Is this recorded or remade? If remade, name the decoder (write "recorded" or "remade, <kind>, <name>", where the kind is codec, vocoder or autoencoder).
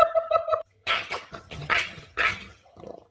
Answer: remade, vocoder, HiFi-GAN